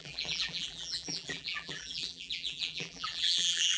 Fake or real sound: fake